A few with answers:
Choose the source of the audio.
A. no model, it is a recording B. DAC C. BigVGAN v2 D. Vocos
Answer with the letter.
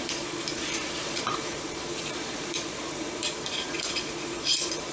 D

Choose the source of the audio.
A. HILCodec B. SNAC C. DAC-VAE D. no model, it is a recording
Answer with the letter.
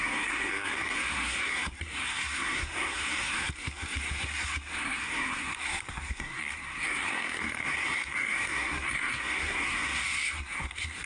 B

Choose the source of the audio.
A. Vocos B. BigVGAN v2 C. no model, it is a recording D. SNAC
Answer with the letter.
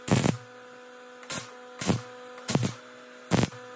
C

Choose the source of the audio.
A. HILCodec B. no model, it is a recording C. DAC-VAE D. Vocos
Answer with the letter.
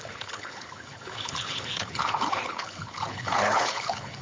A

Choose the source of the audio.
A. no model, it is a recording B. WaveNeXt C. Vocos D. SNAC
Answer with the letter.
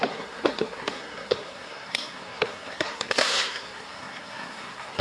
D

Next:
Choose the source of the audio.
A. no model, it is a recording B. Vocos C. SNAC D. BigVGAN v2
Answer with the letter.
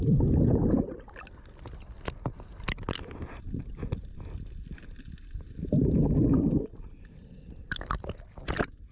A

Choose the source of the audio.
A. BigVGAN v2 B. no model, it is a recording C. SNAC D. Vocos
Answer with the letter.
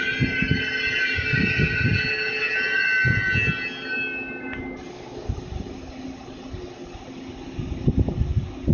B